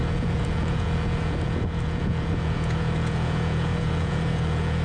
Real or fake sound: fake